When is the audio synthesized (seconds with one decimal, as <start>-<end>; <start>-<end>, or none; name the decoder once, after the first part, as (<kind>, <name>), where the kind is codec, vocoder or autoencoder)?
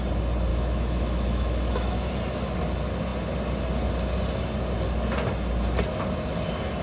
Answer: 0.5-2.1 (autoencoder, DAC-VAE)